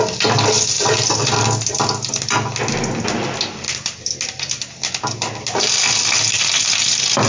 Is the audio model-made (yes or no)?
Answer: no